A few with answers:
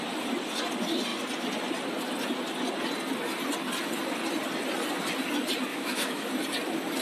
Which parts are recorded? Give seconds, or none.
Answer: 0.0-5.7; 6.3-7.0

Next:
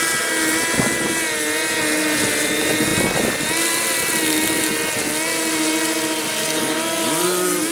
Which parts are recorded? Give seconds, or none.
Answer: 0.0-7.7

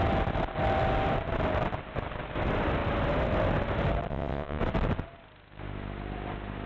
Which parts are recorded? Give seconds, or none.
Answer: 0.0-4.1; 4.6-6.7

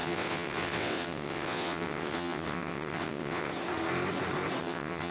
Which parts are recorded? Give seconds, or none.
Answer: 3.5-4.6

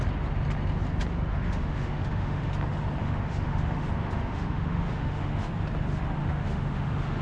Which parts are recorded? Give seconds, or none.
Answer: 0.0-1.3; 2.5-3.0; 5.5-6.2